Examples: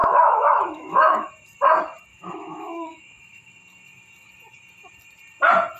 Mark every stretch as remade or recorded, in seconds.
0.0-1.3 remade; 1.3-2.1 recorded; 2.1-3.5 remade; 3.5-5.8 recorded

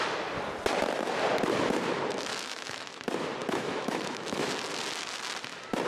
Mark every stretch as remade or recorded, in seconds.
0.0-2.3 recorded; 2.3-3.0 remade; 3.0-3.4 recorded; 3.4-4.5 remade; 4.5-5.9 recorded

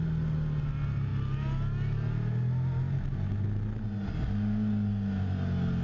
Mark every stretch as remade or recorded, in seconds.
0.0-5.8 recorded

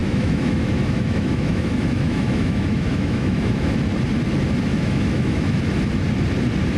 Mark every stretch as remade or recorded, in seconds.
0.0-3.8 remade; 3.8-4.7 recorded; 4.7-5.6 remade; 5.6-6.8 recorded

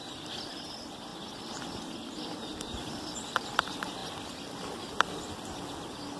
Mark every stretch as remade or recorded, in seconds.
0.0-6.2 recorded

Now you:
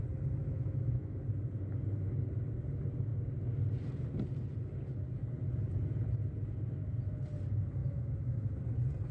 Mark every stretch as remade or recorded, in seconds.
0.0-0.4 recorded; 0.4-1.2 remade; 1.2-7.8 recorded; 7.8-8.5 remade; 8.5-9.1 recorded